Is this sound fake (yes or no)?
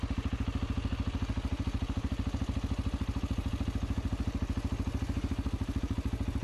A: no